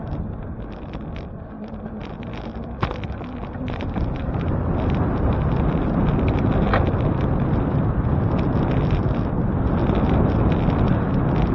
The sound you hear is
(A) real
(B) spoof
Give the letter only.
A